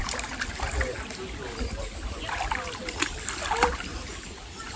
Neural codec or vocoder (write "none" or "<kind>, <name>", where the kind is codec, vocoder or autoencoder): none